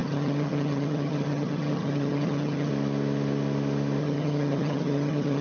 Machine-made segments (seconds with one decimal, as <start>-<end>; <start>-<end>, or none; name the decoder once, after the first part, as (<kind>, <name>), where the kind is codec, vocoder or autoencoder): 0.0-2.7 (vocoder, HiFi-GAN); 4.0-5.4